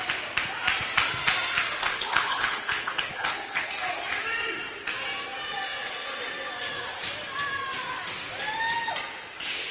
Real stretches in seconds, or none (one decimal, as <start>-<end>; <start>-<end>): 0.0-1.9; 3.7-9.7